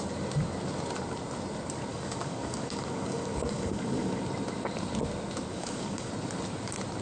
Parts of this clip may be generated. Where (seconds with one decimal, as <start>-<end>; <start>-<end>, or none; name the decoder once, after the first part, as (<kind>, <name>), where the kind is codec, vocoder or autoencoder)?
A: 1.9-4.2 (codec, DAC); 5.5-6.1